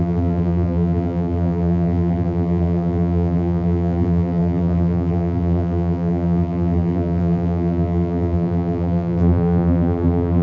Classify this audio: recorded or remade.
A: remade